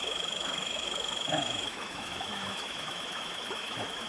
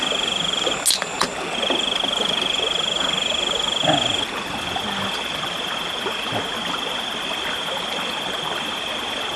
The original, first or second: second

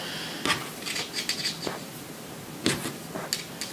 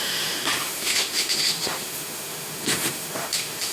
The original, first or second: first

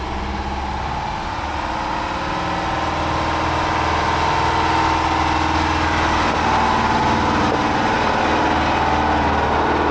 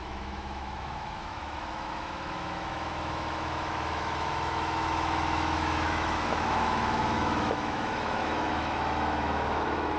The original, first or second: first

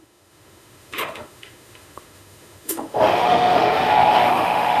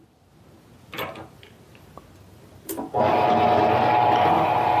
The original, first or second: second